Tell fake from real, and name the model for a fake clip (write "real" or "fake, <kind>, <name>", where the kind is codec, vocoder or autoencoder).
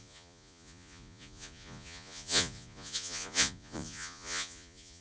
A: fake, vocoder, Vocos